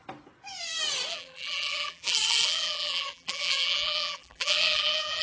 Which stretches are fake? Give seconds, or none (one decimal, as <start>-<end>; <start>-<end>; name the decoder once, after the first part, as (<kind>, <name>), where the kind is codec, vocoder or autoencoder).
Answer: 1.1-5.2 (vocoder, BigVGAN v2)